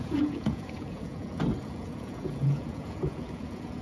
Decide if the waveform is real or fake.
fake